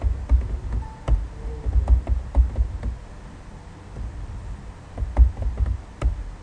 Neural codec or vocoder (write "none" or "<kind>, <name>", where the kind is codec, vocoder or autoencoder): none